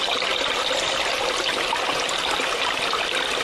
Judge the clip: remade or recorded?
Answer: recorded